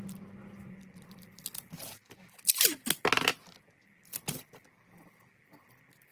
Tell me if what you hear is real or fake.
real